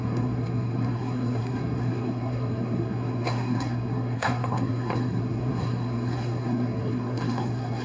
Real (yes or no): no